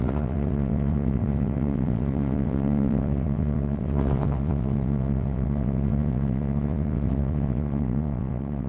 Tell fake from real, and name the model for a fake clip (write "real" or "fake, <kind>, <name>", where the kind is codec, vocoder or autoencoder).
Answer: fake, vocoder, WaveNeXt